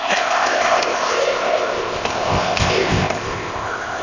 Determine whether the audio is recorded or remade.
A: remade